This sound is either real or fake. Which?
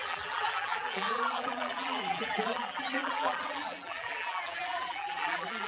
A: fake